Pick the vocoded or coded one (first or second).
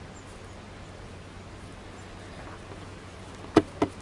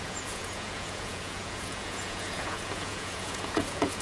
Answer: second